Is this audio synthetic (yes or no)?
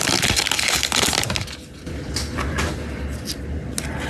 no